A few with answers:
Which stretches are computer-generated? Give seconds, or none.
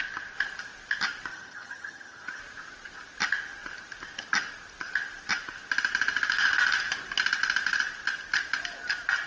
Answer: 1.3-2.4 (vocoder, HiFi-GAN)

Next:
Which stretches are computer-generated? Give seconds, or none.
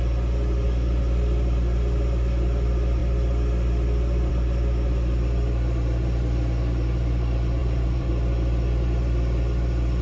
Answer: 7.6-8.1 (vocoder, BigVGAN v2)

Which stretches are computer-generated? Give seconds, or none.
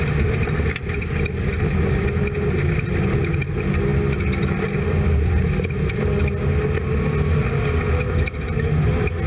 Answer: none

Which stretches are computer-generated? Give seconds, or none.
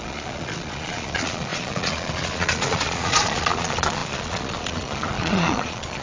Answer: 0.0-6.0 (vocoder, Vocos)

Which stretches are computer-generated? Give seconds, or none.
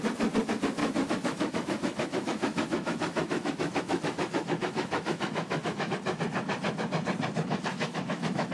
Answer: 0.8-5.9 (autoencoder, DAC-VAE); 7.7-8.5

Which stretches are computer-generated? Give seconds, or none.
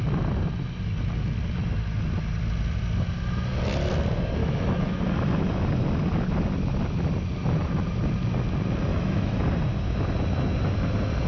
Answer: 4.4-5.0 (autoencoder, DAC-VAE); 8.9-9.4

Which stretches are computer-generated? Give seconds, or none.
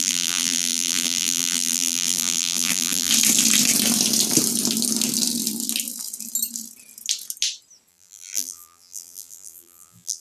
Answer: 0.0-3.1 (vocoder, BigVGAN v2); 7.9-10.2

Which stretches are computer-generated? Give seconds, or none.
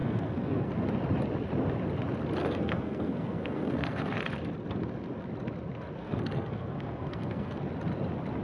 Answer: 0.0-0.7 (codec, SNAC); 2.4-4.2; 6.0-7.7